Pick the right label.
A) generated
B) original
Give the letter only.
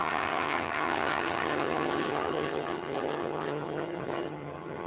A